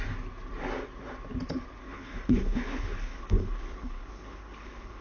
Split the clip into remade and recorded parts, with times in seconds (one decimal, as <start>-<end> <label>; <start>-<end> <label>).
0.0-1.8 recorded; 1.8-5.0 remade